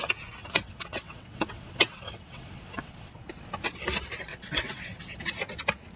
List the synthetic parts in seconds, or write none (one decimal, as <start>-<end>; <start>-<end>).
0.4-3.2; 4.3-5.2